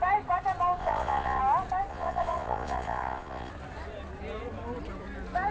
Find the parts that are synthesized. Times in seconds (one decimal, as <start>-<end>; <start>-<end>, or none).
0.8-1.4; 1.9-3.5